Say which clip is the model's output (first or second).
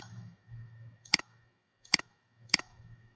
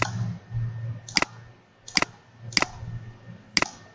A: first